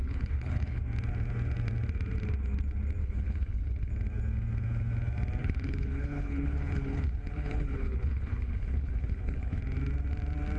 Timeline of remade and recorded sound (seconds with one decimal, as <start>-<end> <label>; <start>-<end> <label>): 0.0-0.8 remade; 0.8-3.0 recorded; 3.0-3.9 remade; 3.9-5.4 recorded; 5.4-9.6 remade; 9.6-10.6 recorded

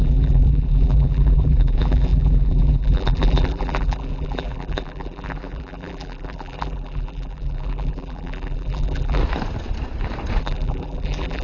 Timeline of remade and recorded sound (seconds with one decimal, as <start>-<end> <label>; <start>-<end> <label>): 0.0-9.2 remade; 9.2-10.4 recorded; 10.4-11.4 remade